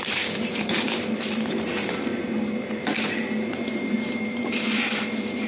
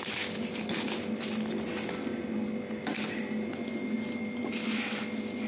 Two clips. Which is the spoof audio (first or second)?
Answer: first